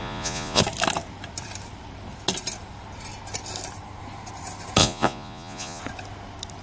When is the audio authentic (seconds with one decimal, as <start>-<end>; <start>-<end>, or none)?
0.6-4.8; 5.8-6.6